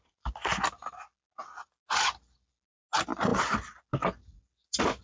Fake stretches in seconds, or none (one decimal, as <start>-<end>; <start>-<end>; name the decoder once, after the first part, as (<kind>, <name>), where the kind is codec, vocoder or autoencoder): none